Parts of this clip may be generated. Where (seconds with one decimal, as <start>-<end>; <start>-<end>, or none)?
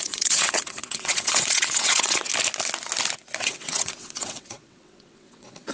0.0-2.3; 3.4-5.7